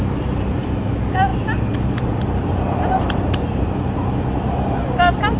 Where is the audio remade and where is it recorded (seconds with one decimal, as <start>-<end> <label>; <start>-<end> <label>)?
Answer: 0.0-5.4 recorded